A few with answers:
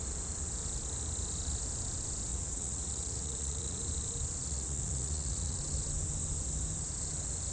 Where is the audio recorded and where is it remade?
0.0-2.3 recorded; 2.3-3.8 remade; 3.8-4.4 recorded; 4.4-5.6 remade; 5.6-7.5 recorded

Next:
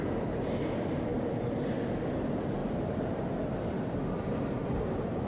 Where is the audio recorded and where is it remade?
0.0-2.6 recorded; 2.6-3.2 remade; 3.2-4.6 recorded; 4.6-5.3 remade

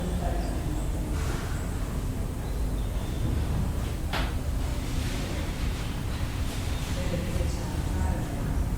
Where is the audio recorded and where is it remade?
0.0-4.7 recorded; 4.7-7.4 remade; 7.4-8.8 recorded

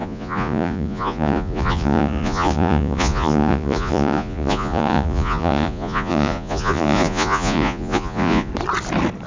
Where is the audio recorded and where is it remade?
0.0-8.5 remade; 8.5-9.3 recorded